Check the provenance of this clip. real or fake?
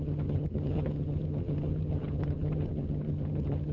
fake